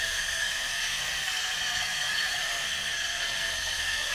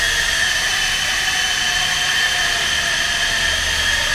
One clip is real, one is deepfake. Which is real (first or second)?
second